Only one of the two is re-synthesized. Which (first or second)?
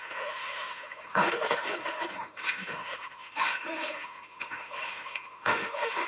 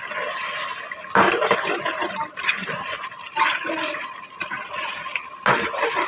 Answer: first